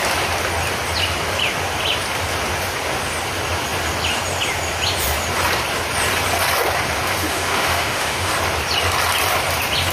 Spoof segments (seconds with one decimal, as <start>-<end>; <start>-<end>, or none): 7.2-8.3